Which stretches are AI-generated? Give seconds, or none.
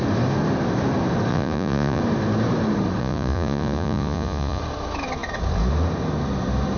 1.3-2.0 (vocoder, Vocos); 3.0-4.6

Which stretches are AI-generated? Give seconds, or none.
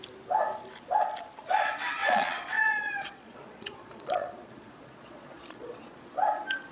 2.0-6.0 (vocoder, Vocos)